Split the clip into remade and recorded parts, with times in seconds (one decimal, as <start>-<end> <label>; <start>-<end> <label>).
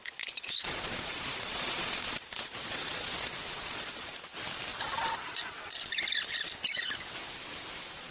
0.0-4.1 remade; 4.1-4.7 recorded; 4.7-5.5 remade; 5.5-8.1 recorded